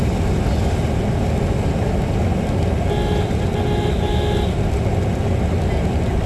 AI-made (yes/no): no